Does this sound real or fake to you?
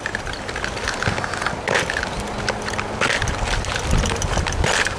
real